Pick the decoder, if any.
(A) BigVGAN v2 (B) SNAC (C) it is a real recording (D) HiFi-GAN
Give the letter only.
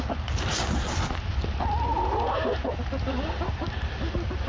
C